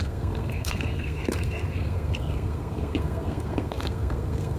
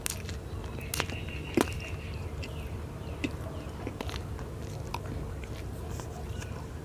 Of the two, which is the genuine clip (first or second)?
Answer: second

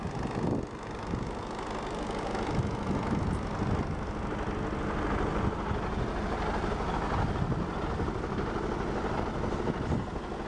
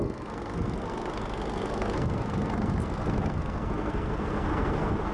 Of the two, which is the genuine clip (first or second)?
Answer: first